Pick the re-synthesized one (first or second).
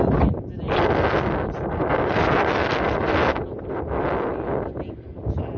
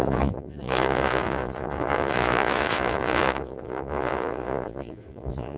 second